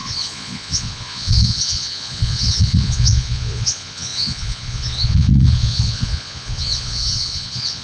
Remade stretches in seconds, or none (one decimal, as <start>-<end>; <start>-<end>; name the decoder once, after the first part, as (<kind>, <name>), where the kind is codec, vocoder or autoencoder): 0.0-7.8 (vocoder, Vocos)